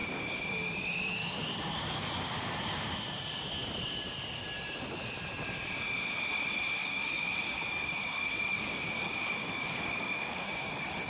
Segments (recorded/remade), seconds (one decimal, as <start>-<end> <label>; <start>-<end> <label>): 0.0-6.8 recorded; 6.8-10.7 remade; 10.7-11.1 recorded